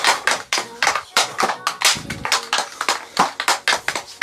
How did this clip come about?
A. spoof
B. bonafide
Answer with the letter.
B